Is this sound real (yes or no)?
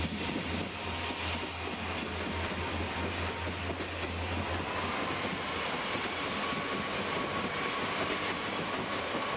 yes